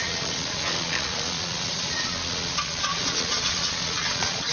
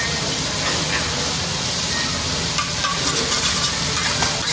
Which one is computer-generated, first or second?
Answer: first